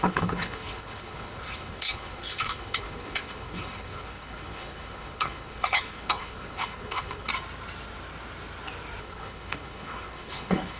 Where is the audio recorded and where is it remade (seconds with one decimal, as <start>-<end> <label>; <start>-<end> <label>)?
0.0-7.3 remade; 7.3-9.0 recorded; 9.0-10.8 remade